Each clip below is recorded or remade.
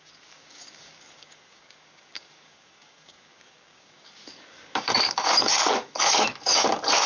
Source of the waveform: remade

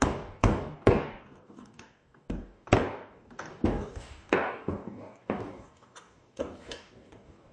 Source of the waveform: remade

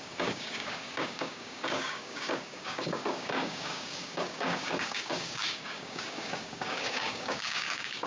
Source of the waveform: remade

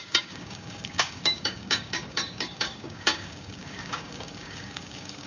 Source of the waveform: remade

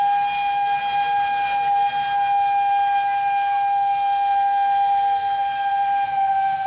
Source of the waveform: recorded